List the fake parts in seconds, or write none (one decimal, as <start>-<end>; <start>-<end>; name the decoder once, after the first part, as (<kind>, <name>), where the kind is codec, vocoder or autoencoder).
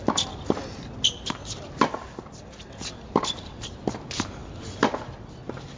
none